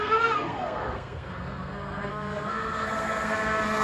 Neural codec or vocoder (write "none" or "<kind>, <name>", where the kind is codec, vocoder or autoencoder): codec, SNAC